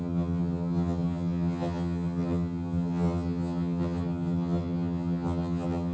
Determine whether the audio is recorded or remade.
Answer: remade